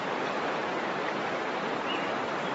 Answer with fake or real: fake